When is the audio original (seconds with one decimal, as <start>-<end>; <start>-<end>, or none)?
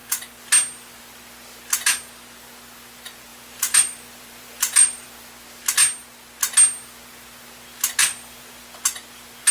0.0-3.3; 5.3-8.0; 8.6-9.5